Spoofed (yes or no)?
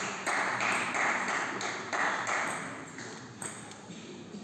yes